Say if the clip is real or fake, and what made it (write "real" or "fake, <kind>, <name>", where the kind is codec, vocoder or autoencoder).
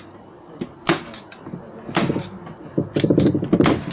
real